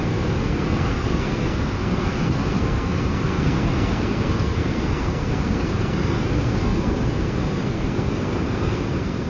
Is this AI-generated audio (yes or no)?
yes